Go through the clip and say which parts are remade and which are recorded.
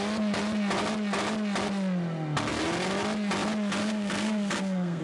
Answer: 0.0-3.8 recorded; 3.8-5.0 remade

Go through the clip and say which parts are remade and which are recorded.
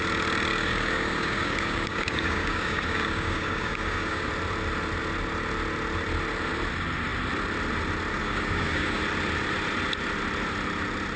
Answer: 0.0-0.5 recorded; 0.5-4.3 remade; 4.3-8.2 recorded; 8.2-9.0 remade; 9.0-11.2 recorded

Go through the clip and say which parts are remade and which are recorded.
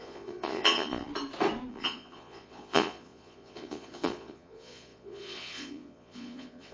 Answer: 0.0-1.1 remade; 1.1-1.7 recorded; 1.7-6.7 remade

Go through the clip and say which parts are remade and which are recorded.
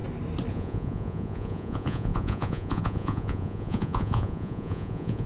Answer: 0.0-0.5 recorded; 0.5-5.3 remade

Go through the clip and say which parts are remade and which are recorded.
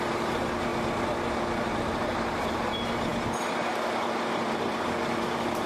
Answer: 0.0-0.7 remade; 0.7-1.7 recorded; 1.7-5.7 remade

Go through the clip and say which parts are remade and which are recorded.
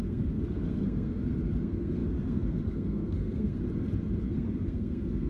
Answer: 0.0-3.6 remade; 3.6-4.2 recorded; 4.2-5.3 remade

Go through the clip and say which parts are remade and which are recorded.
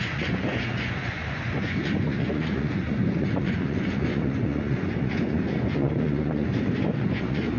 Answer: 0.0-7.6 remade